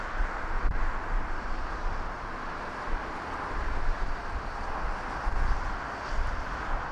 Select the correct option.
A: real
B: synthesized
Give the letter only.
A